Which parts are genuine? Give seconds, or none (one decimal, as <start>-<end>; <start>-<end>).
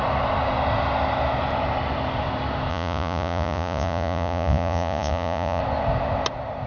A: 0.0-2.7; 5.6-6.7